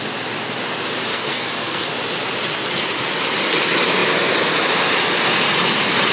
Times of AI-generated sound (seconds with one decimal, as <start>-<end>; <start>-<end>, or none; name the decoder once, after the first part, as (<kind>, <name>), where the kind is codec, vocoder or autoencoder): 1.1-1.9 (codec, SNAC)